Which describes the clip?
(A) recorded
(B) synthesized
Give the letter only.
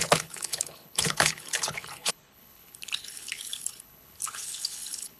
B